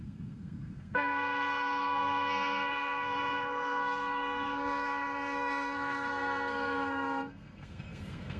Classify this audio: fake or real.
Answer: fake